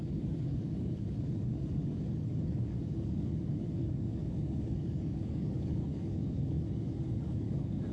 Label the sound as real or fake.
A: fake